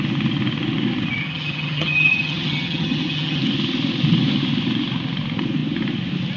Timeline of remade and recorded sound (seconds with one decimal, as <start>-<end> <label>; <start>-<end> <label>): 0.0-1.2 recorded; 1.2-3.4 remade; 3.4-6.4 recorded